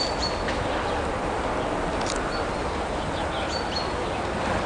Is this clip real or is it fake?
real